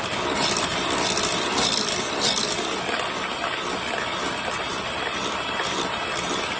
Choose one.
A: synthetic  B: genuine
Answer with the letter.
B